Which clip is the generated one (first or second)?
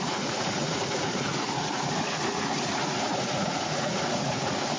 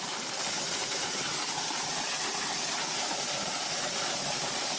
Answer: first